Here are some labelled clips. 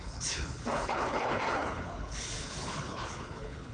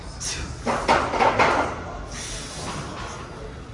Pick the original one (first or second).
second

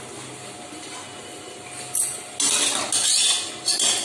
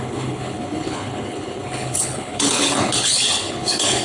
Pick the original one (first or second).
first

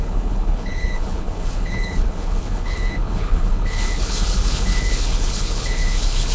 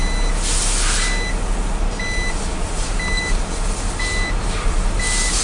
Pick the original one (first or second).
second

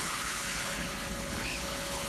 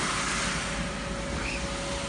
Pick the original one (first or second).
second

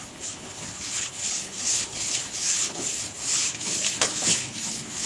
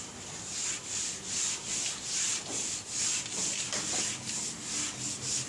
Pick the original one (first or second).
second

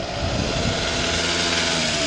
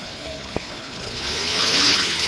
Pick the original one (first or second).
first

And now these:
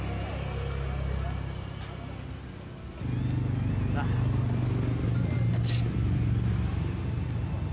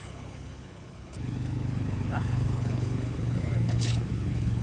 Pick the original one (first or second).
first